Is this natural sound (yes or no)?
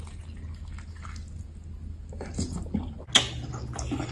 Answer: yes